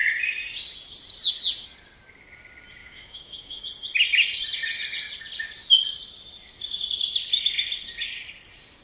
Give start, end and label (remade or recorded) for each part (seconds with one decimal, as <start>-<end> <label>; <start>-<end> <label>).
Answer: 0.0-2.8 recorded; 2.8-3.6 remade; 3.6-8.8 recorded